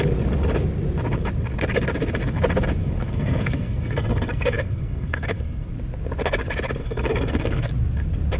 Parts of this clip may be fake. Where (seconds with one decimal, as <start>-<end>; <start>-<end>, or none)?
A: 2.8-5.7; 6.8-7.7